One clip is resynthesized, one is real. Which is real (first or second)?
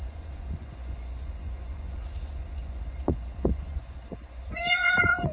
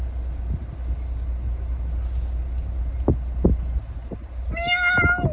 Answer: second